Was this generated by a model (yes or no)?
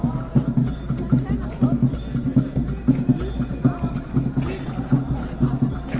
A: no